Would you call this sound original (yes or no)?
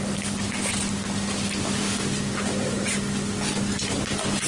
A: yes